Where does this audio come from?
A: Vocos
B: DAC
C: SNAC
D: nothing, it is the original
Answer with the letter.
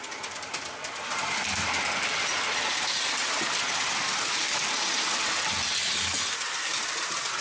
D